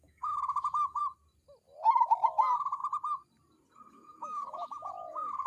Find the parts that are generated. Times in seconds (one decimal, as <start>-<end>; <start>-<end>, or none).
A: 0.0-1.0; 1.8-2.8; 3.9-5.5